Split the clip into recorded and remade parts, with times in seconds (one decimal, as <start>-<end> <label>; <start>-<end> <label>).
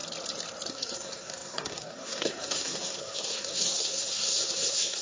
0.0-0.7 recorded; 0.7-5.0 remade